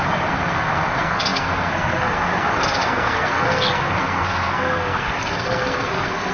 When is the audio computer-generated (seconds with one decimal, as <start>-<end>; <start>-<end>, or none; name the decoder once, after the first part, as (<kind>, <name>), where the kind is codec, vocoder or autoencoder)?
0.0-6.3 (codec, SNAC)